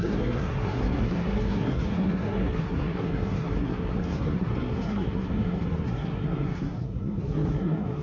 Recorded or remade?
remade